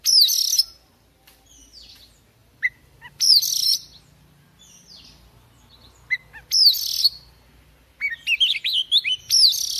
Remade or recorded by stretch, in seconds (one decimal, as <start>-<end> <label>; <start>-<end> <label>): 0.0-2.4 recorded; 2.4-4.0 remade; 4.0-9.8 recorded